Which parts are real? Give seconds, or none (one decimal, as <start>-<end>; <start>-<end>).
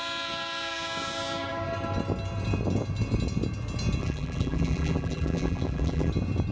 0.0-4.0; 6.1-6.5